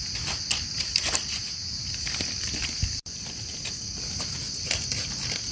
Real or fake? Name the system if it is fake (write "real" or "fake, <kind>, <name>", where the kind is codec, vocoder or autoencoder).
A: real